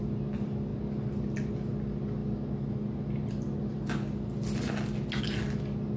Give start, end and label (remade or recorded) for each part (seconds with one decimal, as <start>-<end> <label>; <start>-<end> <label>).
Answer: 0.0-6.0 recorded